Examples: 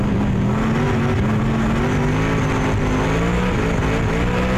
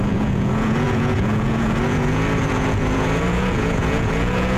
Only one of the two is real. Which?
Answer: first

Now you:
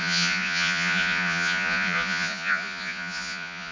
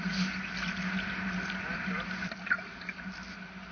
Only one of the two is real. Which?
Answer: second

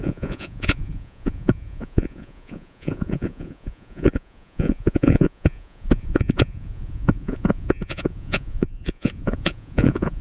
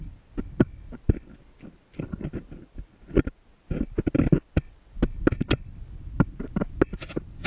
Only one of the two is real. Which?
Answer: second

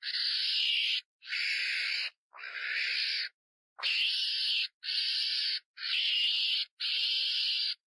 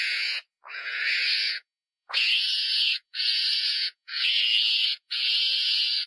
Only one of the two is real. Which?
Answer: first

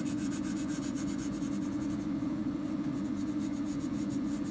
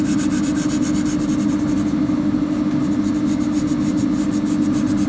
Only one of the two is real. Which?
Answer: second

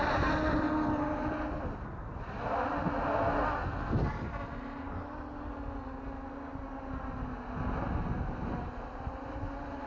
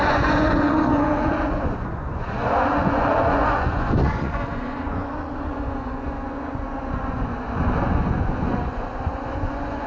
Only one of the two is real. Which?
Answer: first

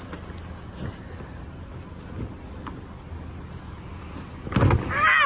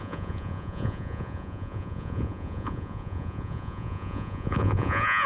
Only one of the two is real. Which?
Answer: first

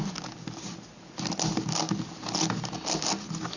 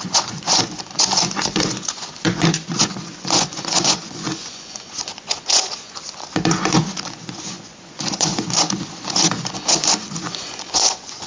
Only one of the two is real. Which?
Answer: first